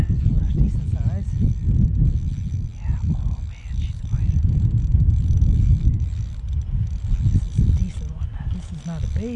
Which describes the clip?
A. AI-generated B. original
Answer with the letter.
B